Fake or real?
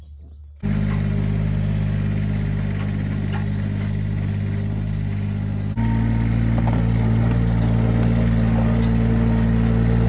real